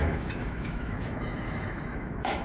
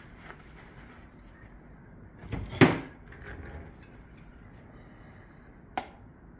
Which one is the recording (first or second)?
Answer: second